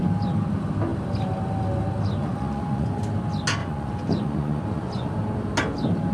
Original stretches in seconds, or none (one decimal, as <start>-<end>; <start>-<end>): 0.0-2.2; 3.0-3.6; 5.1-6.1